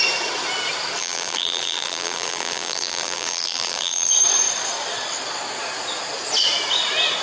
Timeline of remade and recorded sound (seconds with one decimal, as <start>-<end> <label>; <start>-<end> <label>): 0.0-1.0 recorded; 1.0-4.1 remade; 4.1-7.2 recorded